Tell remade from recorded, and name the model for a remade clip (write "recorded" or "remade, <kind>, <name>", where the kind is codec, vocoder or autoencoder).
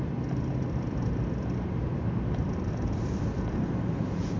remade, vocoder, BigVGAN v2